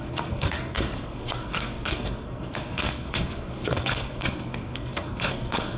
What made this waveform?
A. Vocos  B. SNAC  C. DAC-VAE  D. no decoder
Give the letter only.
B